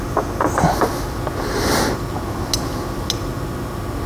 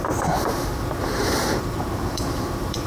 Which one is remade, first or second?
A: second